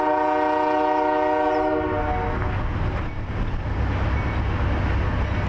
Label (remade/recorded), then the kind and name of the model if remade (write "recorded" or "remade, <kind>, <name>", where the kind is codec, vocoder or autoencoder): recorded